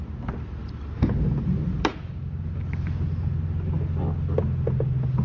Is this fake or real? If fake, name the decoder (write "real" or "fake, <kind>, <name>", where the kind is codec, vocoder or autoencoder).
real